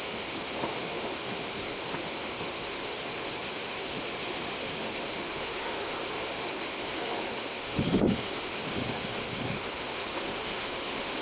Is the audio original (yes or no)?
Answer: no